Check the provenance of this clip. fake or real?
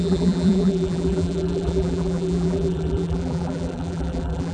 fake